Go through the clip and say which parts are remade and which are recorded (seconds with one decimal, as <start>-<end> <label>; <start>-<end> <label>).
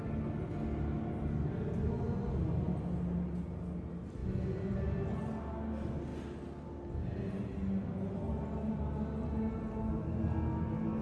0.0-11.0 recorded